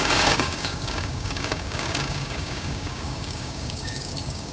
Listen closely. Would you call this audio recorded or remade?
remade